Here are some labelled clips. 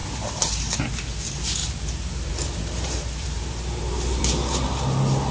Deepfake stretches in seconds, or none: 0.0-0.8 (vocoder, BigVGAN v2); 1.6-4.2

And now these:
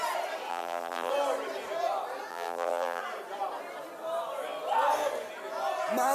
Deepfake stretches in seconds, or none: 0.5-1.1 (vocoder, BigVGAN v2); 2.3-3.0

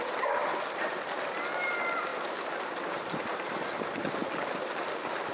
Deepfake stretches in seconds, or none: none